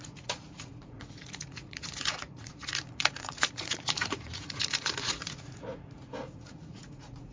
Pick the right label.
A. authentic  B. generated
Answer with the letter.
B